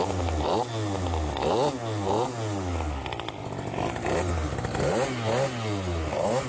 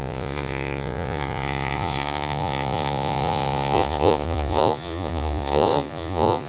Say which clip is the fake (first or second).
second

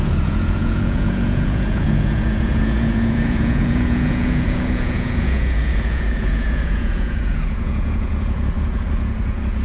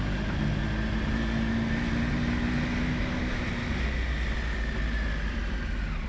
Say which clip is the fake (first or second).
first